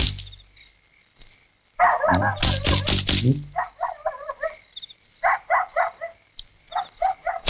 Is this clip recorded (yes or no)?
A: yes